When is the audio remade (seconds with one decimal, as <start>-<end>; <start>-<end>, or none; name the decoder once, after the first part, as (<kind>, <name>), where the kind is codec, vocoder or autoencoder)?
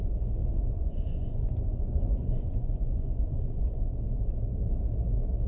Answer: 0.4-3.7 (vocoder, Vocos)